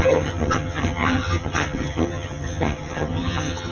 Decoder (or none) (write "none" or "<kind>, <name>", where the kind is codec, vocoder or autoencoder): vocoder, HiFi-GAN